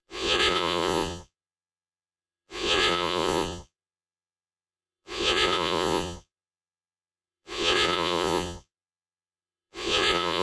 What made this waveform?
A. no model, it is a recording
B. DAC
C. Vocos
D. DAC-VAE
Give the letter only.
C